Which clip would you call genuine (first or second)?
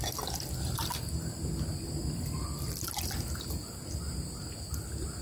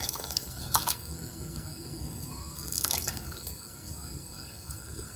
first